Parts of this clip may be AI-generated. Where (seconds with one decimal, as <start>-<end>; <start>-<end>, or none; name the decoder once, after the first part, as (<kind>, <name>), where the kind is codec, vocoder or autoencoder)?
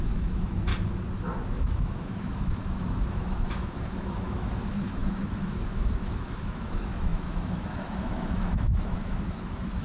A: 0.0-0.7 (autoencoder, DAC-VAE); 1.5-9.8